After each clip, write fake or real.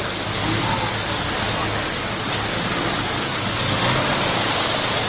real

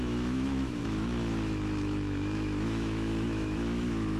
fake